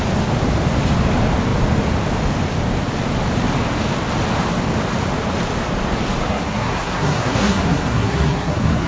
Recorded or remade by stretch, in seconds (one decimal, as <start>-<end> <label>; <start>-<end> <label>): 0.0-6.2 recorded; 6.2-8.9 remade